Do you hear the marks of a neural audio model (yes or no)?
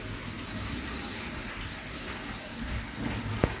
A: no